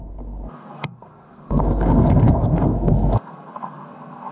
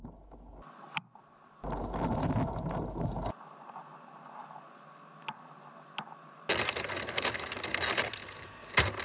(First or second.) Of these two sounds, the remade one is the first